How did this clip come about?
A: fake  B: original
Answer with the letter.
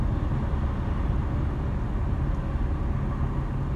B